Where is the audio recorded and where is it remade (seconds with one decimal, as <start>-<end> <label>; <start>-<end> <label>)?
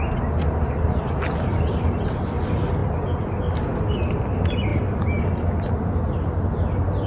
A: 0.0-7.1 recorded